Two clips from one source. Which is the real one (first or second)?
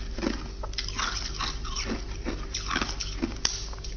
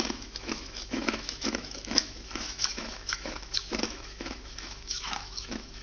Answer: first